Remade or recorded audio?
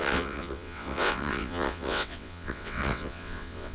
remade